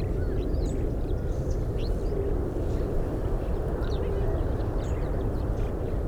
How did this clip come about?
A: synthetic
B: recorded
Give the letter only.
B